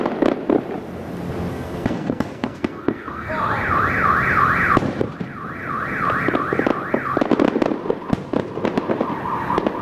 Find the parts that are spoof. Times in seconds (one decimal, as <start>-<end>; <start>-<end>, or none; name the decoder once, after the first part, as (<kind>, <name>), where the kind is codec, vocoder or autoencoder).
1.5-3.3 (codec, SNAC)